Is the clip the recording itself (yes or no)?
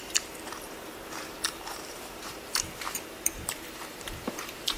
no